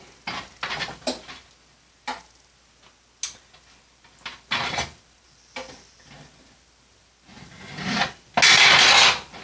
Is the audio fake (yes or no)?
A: no